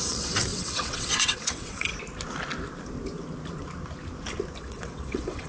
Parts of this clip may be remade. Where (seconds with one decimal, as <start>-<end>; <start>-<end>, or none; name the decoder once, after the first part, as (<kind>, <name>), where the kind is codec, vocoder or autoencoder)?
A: 0.0-1.9 (vocoder, WaveNeXt); 4.6-5.5